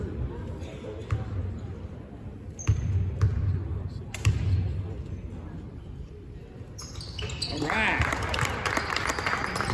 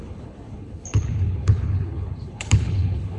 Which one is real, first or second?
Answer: first